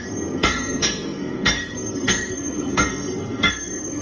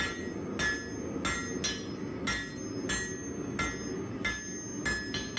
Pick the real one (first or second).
second